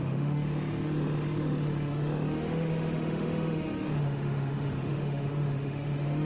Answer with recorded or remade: remade